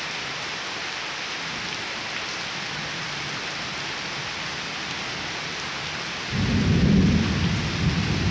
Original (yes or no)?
yes